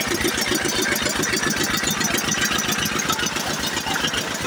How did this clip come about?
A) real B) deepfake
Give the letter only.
A